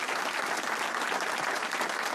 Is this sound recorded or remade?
recorded